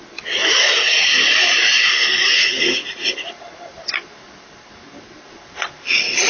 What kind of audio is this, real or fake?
real